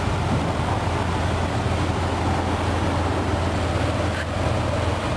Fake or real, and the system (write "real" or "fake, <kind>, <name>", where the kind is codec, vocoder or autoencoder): fake, vocoder, BigVGAN v2